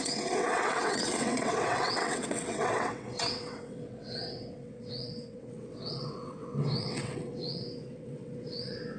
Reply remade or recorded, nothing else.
remade